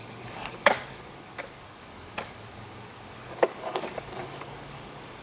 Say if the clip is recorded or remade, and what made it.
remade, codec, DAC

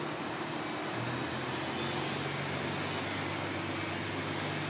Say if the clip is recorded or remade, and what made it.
recorded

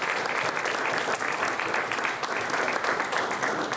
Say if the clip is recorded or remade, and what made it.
recorded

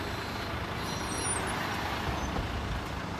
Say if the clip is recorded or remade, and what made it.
recorded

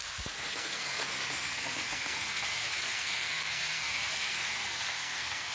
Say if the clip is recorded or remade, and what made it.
remade, codec, SNAC